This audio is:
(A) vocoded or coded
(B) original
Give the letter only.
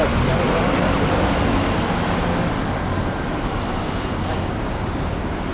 B